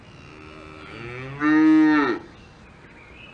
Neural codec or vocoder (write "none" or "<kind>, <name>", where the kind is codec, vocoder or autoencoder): none